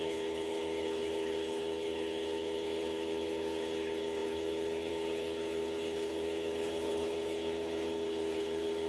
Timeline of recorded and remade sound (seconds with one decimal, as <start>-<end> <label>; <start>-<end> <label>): 0.0-8.9 remade